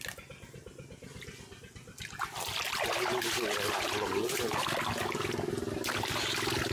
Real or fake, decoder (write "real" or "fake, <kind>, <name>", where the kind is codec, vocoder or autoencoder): real